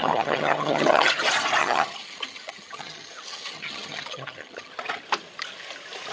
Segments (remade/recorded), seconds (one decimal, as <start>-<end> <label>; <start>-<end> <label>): 0.0-1.1 remade; 1.1-1.6 recorded; 1.6-4.7 remade; 4.7-6.1 recorded